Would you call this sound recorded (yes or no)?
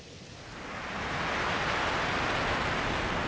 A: yes